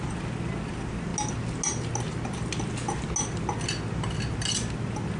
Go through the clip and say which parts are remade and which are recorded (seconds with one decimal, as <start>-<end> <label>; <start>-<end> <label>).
0.0-5.2 recorded